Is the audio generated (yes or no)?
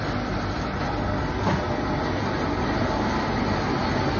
no